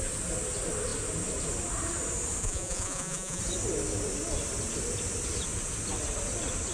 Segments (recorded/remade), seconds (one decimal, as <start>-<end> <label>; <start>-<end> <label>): 0.0-2.4 recorded; 2.4-3.4 remade; 3.4-6.7 recorded

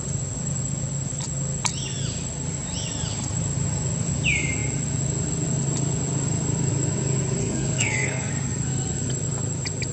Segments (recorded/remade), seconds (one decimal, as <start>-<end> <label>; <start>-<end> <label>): 0.0-7.4 recorded; 7.4-8.3 remade; 8.3-9.9 recorded

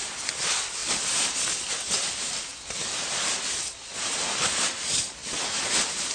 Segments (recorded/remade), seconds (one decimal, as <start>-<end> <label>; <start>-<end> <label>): 0.0-6.1 recorded